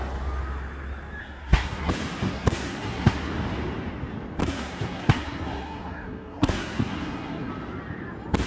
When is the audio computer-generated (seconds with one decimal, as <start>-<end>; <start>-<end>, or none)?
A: 1.2-1.9; 2.3-3.3; 4.4-7.5